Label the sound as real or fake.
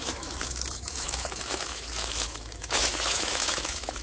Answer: fake